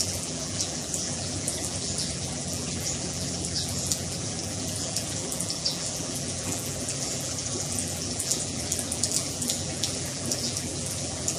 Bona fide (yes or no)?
no